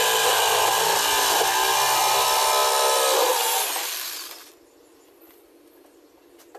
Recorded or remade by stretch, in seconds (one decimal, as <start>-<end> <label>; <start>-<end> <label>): 0.0-6.6 recorded